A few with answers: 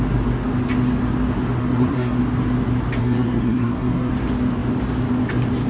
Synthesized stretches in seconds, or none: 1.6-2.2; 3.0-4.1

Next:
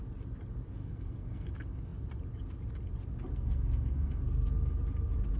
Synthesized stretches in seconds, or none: 0.8-1.5; 3.3-4.5

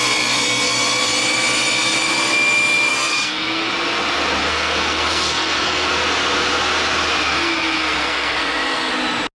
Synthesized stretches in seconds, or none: 2.9-3.7; 4.4-5.9; 7.3-8.9

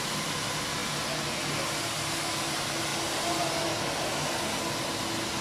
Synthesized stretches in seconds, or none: none